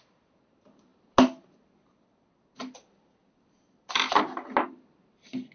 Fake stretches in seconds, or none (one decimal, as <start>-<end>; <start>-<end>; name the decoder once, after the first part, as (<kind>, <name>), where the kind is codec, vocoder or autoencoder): none